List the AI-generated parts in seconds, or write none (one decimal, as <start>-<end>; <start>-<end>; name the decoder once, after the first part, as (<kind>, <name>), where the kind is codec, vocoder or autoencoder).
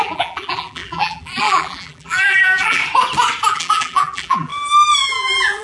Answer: 0.0-2.8 (vocoder, BigVGAN v2); 3.5-4.5; 5.0-5.6